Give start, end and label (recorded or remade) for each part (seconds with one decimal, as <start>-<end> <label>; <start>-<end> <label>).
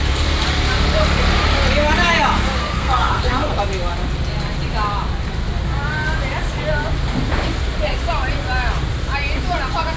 0.0-2.6 recorded; 2.6-3.6 remade; 3.6-10.0 recorded